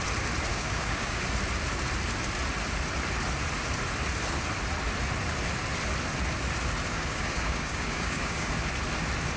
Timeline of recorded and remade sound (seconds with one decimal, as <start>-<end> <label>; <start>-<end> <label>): 0.0-0.5 recorded; 0.5-1.2 remade; 1.2-6.9 recorded; 6.9-8.5 remade; 8.5-9.4 recorded